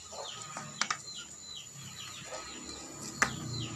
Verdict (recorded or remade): recorded